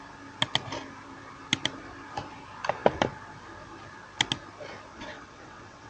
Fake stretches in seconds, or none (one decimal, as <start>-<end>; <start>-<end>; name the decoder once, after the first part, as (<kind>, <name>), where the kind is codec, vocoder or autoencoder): 4.9-5.9 (vocoder, WaveNeXt)